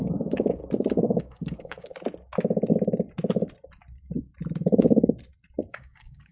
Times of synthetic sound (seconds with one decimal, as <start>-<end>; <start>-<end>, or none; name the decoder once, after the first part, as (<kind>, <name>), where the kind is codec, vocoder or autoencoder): 0.0-0.6 (codec, DAC); 1.2-1.9; 5.7-6.3